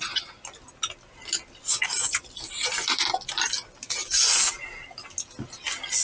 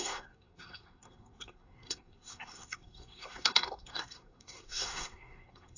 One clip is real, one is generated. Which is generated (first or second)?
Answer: second